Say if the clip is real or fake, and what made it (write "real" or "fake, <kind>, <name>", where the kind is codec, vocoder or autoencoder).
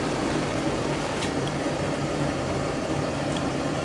fake, vocoder, BigVGAN v2